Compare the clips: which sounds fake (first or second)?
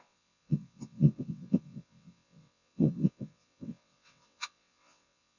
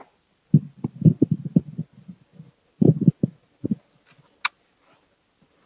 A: first